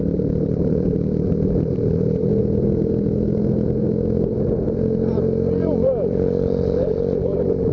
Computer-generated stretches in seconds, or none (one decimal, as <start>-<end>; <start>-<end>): 0.0-2.3; 5.5-7.7